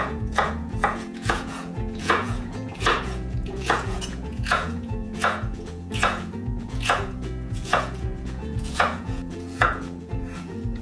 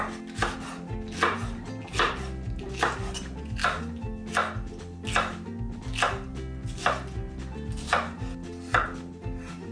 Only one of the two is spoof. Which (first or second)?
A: first